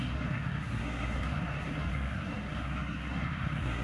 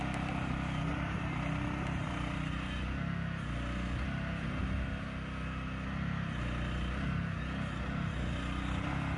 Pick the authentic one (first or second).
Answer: second